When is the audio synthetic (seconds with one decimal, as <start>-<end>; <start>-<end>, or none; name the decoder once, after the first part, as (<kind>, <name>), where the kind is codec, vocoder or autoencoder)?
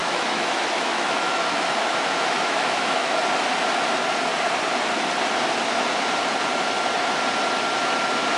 0.0-3.2 (autoencoder, DAC-VAE)